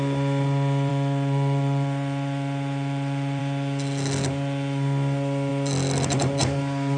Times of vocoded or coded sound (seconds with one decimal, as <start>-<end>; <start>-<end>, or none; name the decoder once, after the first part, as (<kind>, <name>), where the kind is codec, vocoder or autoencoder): 0.9-3.4 (vocoder, BigVGAN v2)